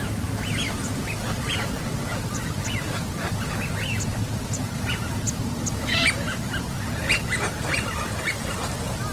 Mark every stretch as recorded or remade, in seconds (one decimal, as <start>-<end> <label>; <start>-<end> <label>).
0.0-9.1 recorded